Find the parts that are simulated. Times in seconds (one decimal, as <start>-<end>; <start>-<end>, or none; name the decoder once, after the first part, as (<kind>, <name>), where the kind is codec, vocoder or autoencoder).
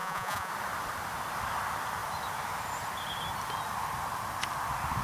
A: 0.0-0.5 (vocoder, Vocos)